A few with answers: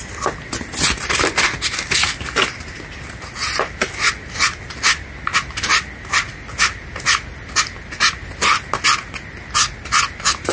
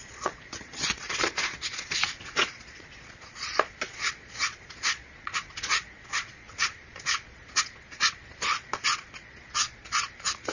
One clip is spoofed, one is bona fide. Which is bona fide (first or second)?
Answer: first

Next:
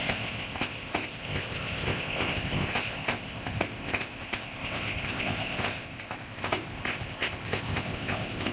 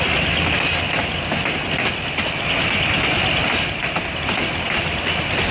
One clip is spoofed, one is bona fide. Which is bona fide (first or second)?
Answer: second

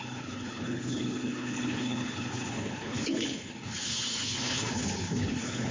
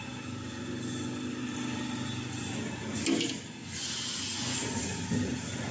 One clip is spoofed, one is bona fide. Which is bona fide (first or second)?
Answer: second